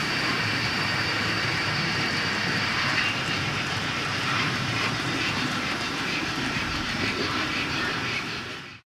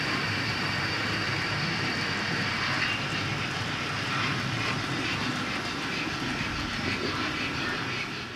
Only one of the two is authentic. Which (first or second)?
second